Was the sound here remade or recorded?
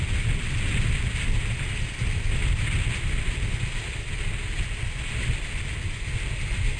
recorded